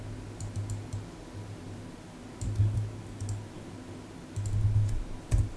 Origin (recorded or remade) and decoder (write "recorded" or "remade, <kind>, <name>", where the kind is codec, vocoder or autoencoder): recorded